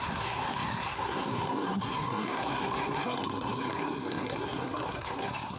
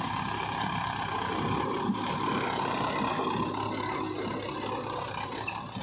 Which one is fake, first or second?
first